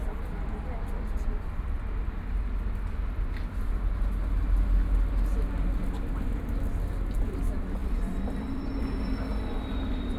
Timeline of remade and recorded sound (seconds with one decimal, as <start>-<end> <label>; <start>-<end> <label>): 0.0-10.2 recorded